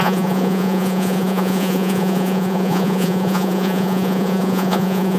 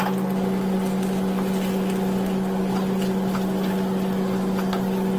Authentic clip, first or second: second